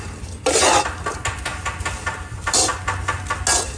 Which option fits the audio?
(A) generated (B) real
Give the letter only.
B